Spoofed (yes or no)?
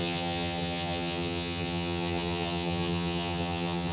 yes